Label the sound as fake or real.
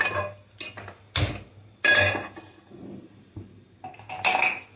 real